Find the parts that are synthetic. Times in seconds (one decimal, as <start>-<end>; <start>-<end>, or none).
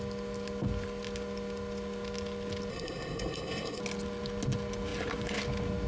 2.7-3.8